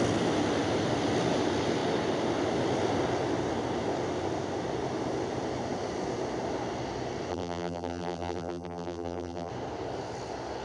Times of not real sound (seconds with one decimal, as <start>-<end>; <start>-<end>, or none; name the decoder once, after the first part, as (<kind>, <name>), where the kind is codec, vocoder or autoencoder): 7.3-9.5 (vocoder, BigVGAN v2)